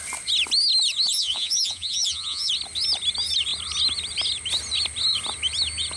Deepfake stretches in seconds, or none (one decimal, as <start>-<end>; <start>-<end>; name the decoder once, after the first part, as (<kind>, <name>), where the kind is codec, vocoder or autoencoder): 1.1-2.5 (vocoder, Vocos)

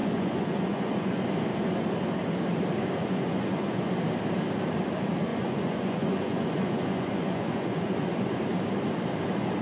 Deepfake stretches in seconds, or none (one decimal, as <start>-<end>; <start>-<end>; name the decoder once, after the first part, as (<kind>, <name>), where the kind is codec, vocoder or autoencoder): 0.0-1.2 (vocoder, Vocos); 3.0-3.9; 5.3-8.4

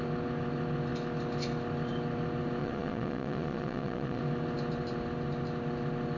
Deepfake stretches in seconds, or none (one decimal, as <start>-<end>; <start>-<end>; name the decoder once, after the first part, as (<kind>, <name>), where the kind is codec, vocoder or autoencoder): 2.6-4.2 (vocoder, Vocos)

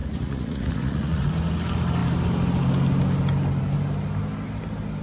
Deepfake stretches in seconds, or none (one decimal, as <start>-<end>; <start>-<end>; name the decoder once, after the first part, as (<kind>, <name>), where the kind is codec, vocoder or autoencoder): 0.0-1.3 (vocoder, Vocos)

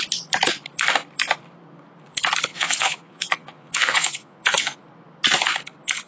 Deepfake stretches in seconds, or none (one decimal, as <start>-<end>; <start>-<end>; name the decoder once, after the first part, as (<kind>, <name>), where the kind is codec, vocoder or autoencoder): 2.5-4.8 (vocoder, Vocos)

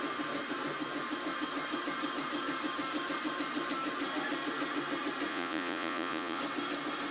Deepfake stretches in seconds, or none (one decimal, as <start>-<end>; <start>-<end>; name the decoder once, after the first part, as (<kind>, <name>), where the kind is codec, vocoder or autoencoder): 5.3-6.4 (vocoder, Vocos)

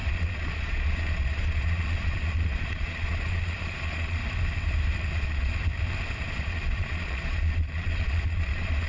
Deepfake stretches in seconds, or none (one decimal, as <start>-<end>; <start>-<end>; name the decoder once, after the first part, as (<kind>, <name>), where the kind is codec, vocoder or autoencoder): 0.0-4.2 (vocoder, Vocos); 5.1-5.6; 6.4-8.9

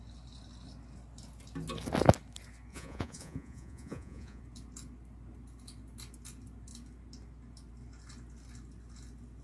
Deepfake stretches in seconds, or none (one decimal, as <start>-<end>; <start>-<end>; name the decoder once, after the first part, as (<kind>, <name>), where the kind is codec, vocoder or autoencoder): 2.7-4.4 (vocoder, Vocos)